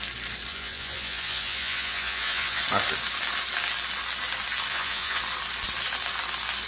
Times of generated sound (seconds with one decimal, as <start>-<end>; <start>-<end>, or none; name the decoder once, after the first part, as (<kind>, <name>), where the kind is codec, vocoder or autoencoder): 0.5-2.6 (vocoder, Vocos); 4.7-5.2